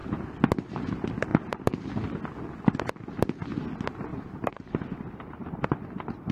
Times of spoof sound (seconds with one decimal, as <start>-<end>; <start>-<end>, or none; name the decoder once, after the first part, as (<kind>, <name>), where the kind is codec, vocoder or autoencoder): 1.3-1.8 (vocoder, BigVGAN v2); 4.1-5.7